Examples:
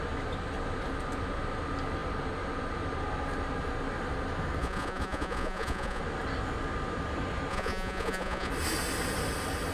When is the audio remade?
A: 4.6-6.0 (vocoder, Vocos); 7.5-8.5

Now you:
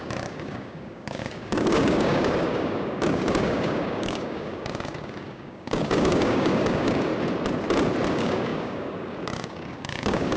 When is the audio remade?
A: 0.0-7.1 (codec, DAC); 8.1-10.4

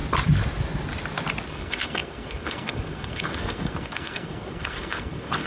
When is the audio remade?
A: 1.5-5.5 (codec, SNAC)

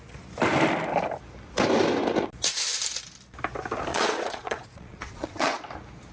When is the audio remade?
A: 3.9-5.6 (vocoder, Vocos)